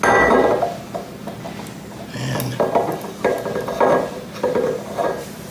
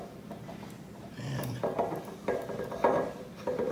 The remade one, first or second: second